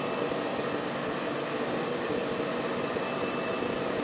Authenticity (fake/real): real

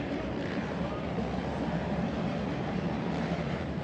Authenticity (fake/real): fake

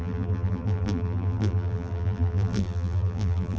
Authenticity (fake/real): fake